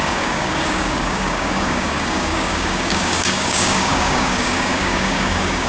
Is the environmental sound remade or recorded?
remade